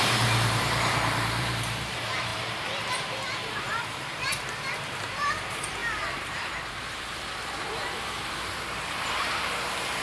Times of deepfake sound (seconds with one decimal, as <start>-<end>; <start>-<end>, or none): 0.0-10.0